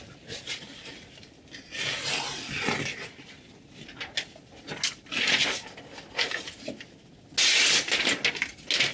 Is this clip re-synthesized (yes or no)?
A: no